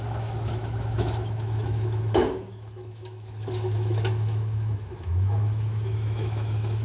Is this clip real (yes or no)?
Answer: no